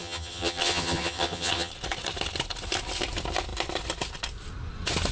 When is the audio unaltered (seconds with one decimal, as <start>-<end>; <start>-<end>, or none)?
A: 1.7-5.1